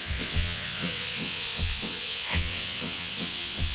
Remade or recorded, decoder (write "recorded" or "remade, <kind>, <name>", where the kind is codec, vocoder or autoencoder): remade, vocoder, WaveNeXt